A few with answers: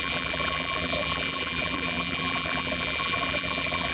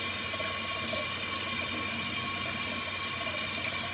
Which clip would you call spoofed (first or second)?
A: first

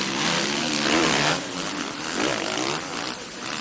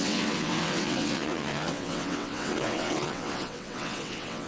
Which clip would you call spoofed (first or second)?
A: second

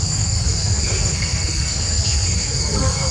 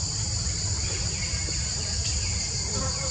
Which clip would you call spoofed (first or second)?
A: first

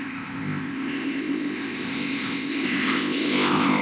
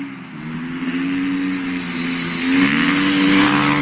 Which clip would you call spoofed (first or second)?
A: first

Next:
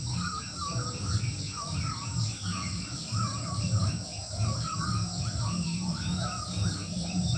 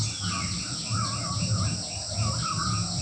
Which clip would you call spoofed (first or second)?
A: first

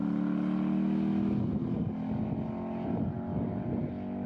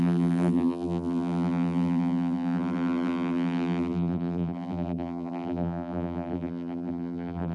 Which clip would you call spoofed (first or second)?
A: second